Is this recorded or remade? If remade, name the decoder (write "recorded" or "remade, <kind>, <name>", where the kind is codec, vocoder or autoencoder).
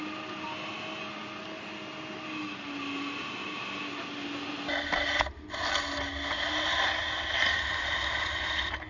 recorded